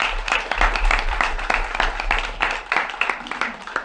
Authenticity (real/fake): fake